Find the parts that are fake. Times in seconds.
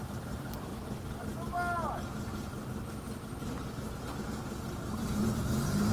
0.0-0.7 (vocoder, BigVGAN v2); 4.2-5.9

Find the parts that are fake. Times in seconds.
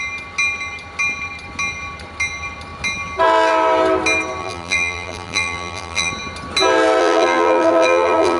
4.4-6.1 (vocoder, BigVGAN v2); 7.0-8.4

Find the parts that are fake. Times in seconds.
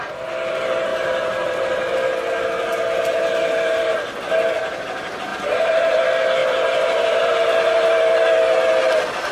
0.9-1.7 (vocoder, BigVGAN v2); 5.3-6.0; 6.4-7.3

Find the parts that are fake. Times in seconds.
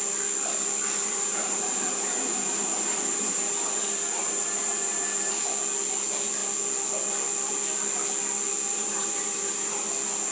1.0-5.4 (vocoder, BigVGAN v2); 8.7-9.9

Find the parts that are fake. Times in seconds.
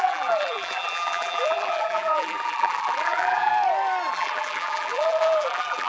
0.0-3.5 (vocoder, BigVGAN v2); 4.1-5.9